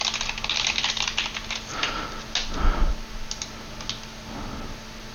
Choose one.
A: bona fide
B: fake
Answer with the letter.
A